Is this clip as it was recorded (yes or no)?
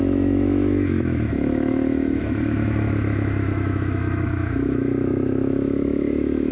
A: no